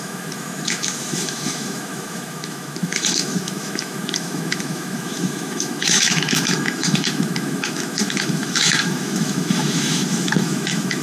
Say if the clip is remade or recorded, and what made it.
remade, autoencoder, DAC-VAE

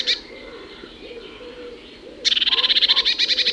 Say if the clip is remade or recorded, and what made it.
remade, vocoder, BigVGAN v2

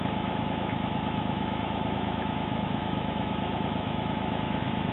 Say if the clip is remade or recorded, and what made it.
remade, autoencoder, DAC-VAE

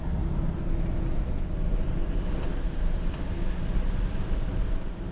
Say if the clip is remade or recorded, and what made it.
recorded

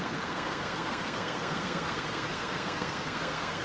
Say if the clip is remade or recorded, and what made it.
remade, codec, SNAC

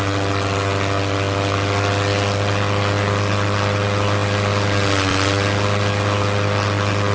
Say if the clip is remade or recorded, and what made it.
recorded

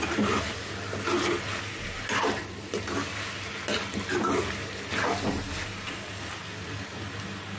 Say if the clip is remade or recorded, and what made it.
recorded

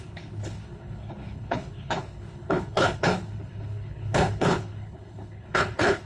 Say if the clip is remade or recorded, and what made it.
remade, codec, HILCodec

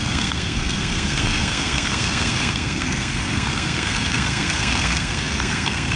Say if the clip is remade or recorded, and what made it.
remade, codec, SNAC